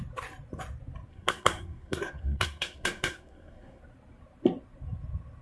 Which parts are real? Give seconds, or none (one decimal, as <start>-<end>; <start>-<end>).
0.0-1.1; 3.8-5.4